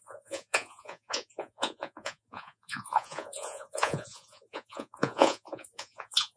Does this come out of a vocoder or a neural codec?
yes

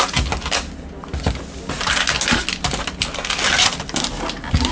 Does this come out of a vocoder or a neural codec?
no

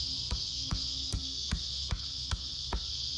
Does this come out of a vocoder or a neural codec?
yes